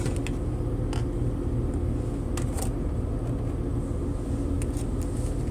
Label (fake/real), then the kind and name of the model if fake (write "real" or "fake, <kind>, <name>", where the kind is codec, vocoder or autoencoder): real